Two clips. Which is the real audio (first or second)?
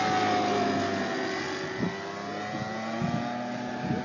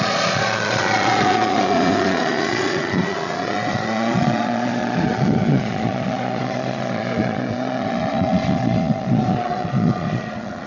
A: first